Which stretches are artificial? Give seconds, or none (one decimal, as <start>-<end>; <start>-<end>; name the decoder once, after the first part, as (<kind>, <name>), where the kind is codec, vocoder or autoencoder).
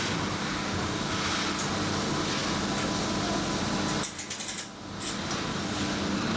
none